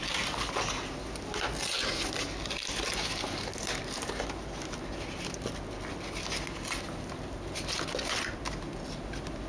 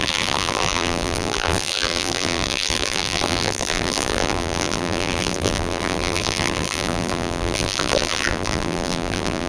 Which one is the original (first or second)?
first